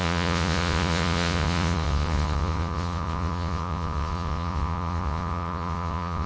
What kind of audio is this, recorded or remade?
remade